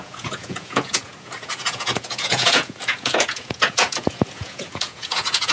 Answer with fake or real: fake